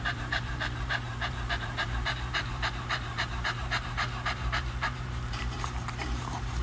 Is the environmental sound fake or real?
fake